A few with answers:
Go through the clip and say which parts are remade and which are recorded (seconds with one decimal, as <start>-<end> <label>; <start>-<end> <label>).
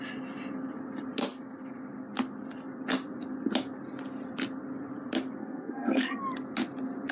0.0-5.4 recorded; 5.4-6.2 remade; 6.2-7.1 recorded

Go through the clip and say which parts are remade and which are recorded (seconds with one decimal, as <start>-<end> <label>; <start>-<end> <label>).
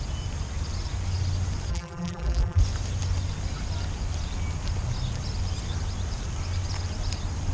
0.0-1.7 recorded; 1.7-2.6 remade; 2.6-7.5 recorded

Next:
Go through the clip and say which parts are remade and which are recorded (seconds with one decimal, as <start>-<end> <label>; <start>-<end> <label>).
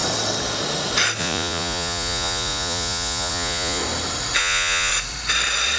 0.0-1.2 recorded; 1.2-3.8 remade; 3.8-4.4 recorded; 4.4-4.9 remade; 4.9-5.8 recorded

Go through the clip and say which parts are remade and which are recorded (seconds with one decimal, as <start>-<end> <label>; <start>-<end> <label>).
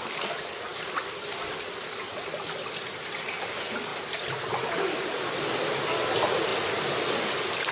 0.0-7.7 recorded